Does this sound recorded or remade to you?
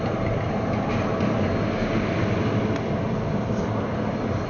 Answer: recorded